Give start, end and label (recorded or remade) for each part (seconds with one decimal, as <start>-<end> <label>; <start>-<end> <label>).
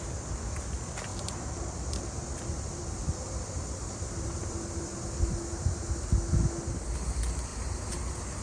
0.0-1.1 recorded; 1.1-5.1 remade; 5.1-8.4 recorded